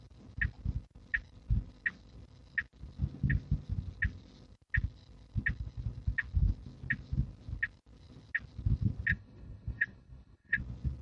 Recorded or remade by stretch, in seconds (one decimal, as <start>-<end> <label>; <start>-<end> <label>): 0.0-9.1 recorded; 9.1-10.6 remade; 10.6-11.0 recorded